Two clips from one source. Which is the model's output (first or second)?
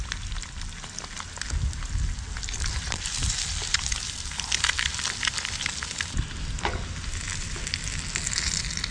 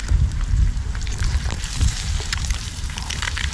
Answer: second